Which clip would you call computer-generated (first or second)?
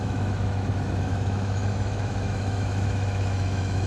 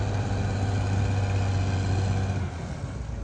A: first